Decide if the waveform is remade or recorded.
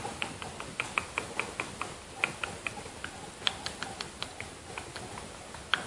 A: recorded